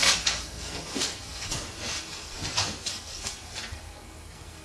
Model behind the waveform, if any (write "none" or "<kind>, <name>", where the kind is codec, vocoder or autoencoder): codec, SNAC